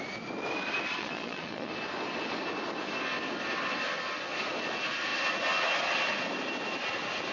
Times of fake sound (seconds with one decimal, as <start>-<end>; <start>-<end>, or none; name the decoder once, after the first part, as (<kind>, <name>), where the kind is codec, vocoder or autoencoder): 1.0-1.7 (vocoder, Vocos)